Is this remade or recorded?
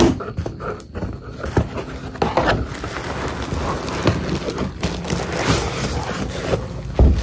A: recorded